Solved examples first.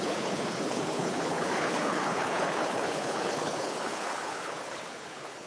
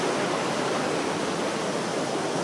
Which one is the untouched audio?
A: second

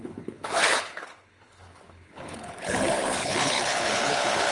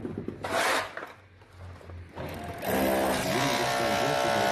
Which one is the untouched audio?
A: second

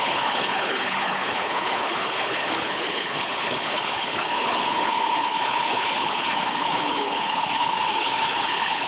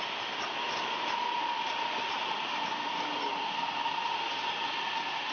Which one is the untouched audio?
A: second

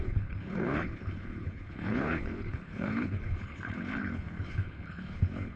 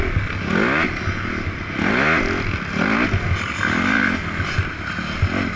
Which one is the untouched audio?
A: second